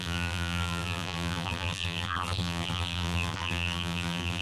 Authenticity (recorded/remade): remade